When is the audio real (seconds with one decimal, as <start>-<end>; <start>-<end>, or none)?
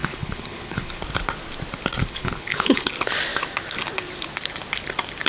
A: 1.0-2.0; 2.9-5.3